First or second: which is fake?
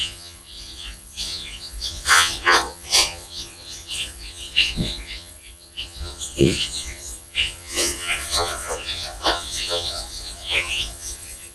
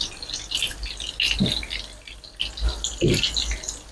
first